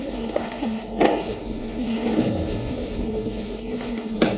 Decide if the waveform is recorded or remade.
remade